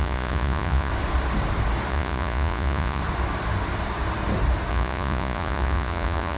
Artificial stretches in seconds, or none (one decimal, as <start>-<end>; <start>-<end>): 0.0-0.9; 1.9-3.0; 4.7-6.4

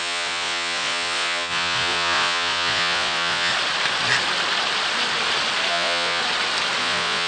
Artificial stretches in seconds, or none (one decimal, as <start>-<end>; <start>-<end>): 0.0-3.5; 5.7-6.2; 6.8-7.3

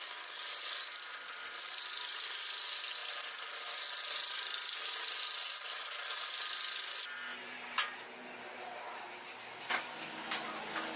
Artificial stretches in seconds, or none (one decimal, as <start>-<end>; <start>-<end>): none

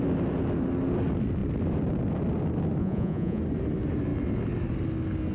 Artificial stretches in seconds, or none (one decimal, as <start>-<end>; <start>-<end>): 2.8-3.4